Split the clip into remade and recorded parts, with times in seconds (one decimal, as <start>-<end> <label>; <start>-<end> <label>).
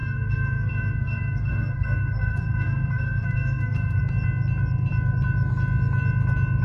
0.0-4.0 remade; 4.0-6.6 recorded